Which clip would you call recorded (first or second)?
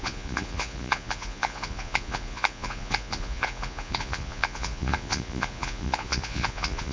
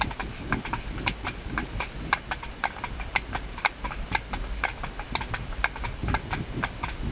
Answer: second